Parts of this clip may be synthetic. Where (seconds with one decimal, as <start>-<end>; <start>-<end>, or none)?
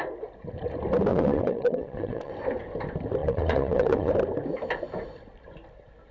1.1-2.3; 3.2-4.1